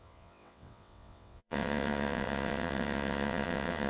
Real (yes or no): no